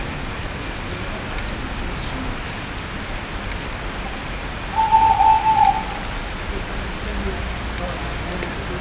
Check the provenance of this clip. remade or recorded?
recorded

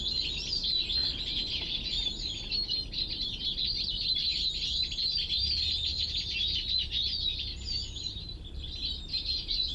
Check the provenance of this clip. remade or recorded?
recorded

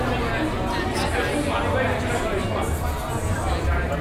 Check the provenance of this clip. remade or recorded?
recorded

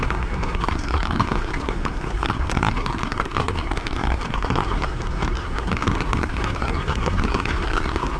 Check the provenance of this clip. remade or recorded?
remade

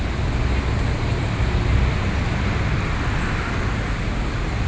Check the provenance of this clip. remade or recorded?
recorded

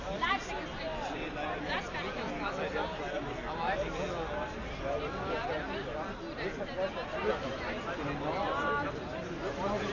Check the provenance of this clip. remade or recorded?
recorded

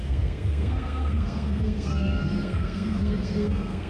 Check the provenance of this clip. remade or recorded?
remade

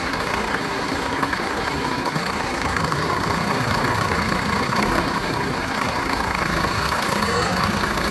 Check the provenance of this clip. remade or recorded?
remade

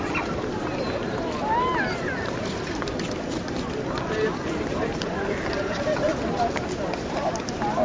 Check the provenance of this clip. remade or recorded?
recorded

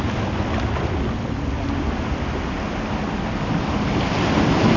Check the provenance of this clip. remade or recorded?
recorded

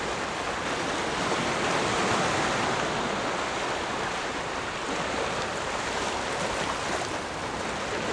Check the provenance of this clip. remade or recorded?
recorded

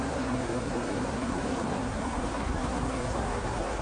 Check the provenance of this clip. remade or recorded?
remade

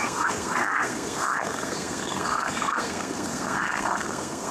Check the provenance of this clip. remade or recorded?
remade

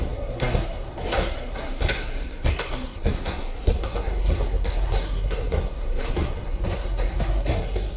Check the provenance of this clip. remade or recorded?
remade